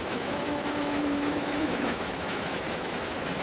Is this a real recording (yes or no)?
no